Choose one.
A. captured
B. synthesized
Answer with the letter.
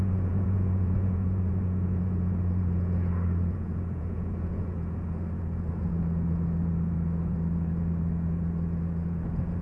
B